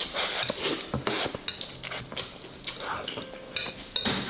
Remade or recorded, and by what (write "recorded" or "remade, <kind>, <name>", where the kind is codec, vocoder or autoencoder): recorded